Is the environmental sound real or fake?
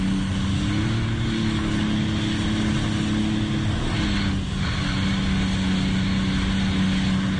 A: real